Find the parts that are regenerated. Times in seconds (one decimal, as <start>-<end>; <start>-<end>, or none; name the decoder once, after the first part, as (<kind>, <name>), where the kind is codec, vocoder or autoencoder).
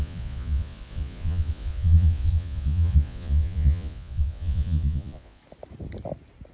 0.0-5.4 (vocoder, Vocos)